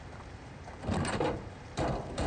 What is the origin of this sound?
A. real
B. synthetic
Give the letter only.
A